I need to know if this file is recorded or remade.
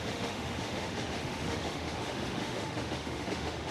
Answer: remade